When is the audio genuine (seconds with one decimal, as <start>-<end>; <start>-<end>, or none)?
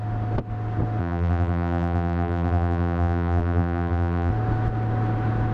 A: 0.0-1.0; 4.3-5.5